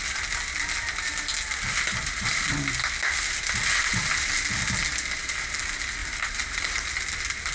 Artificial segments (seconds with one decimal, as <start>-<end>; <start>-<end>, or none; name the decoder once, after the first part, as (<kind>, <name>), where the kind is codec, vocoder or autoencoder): 6.0-6.9 (vocoder, BigVGAN v2)